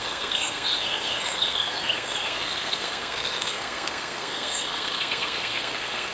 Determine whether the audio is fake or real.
fake